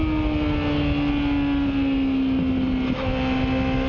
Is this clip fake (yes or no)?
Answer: no